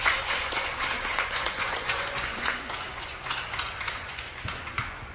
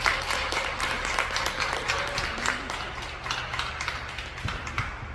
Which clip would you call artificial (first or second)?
first